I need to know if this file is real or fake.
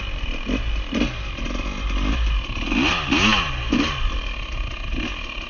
real